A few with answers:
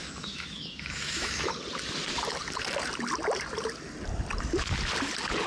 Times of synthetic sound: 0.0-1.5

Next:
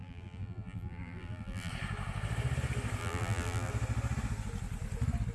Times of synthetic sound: 0.0-1.7; 3.0-3.7

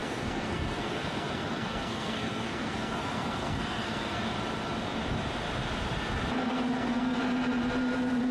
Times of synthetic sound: 0.0-4.2; 6.5-7.2

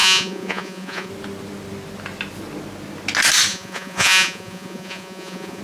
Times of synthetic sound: 0.0-1.1; 3.5-5.6

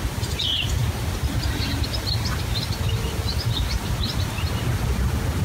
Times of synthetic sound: none